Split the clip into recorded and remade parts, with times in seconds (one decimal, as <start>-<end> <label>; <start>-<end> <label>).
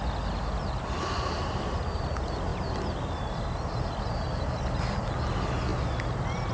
0.0-5.7 recorded; 5.7-6.5 remade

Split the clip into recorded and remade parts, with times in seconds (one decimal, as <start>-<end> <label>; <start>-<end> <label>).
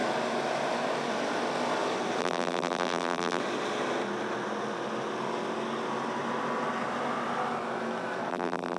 0.0-2.2 recorded; 2.2-3.4 remade; 3.4-8.3 recorded; 8.3-8.8 remade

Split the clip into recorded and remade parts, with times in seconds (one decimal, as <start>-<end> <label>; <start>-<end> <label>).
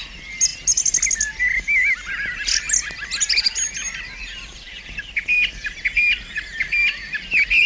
0.0-7.7 recorded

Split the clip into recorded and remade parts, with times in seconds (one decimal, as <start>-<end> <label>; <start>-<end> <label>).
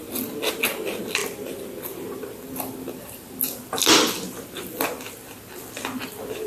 0.0-6.5 recorded